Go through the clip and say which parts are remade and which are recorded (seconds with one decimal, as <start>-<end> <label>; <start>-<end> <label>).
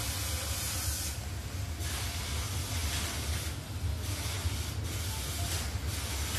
0.0-6.4 recorded